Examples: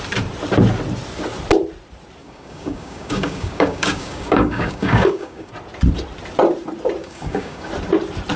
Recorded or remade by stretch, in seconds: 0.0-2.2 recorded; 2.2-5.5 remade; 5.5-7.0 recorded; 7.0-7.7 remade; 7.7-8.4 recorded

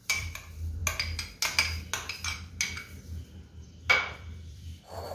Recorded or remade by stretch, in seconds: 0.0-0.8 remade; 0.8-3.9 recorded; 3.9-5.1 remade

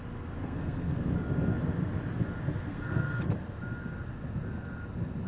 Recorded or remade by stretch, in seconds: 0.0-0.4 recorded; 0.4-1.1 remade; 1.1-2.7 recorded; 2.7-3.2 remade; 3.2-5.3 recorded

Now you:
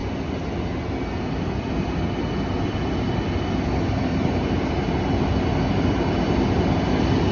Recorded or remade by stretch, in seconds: 0.0-7.3 recorded

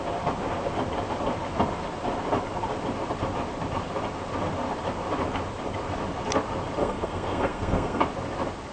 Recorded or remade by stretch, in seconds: 0.0-6.8 recorded; 6.8-8.0 remade; 8.0-8.7 recorded

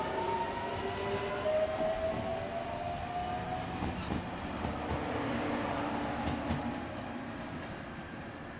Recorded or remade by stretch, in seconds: 0.0-8.6 recorded

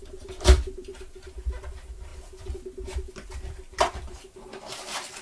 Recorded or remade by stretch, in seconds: 0.0-5.2 remade